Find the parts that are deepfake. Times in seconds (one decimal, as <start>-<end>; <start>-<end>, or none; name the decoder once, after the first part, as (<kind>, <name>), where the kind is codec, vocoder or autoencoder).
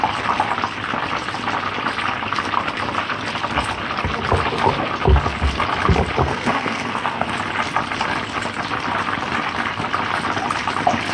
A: 6.2-7.3 (codec, SNAC)